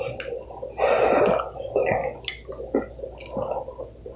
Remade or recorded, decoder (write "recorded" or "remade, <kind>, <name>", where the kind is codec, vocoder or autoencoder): recorded